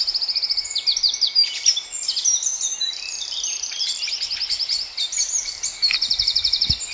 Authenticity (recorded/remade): recorded